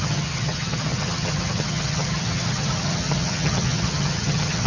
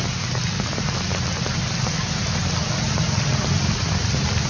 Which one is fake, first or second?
first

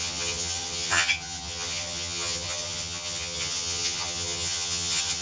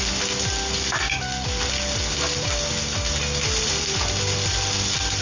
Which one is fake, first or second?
first